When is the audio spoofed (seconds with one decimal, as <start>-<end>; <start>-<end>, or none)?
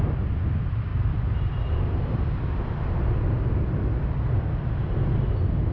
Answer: none